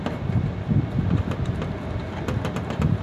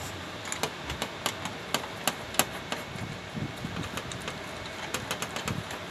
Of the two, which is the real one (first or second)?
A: second